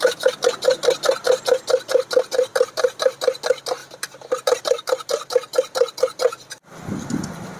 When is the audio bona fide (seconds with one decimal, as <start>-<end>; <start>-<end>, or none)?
3.8-4.6; 5.5-7.6